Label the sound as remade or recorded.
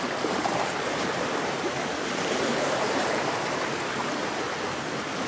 remade